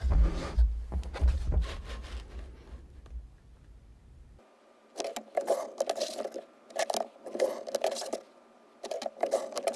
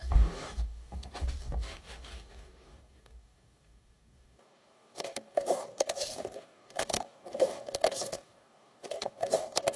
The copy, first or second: second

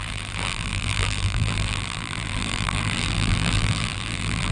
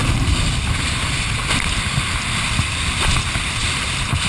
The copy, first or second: first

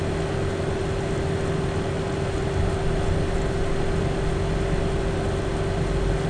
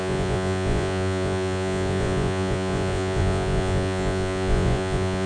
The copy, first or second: second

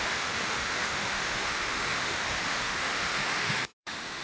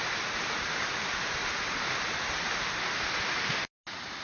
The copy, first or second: first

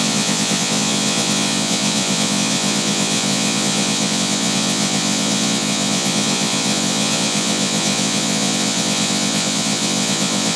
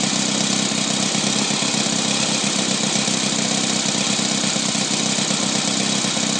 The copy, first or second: first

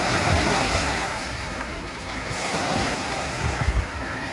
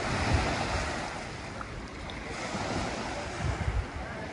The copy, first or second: first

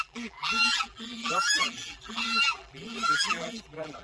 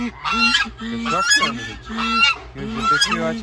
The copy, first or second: first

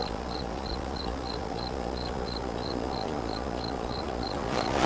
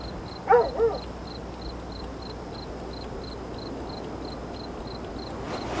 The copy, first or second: first